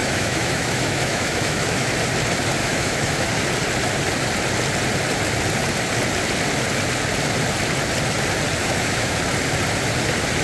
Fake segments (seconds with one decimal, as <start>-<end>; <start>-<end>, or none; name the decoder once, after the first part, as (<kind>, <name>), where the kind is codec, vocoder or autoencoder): 0.0-1.9 (autoencoder, DAC-VAE); 2.6-3.3; 8.6-9.2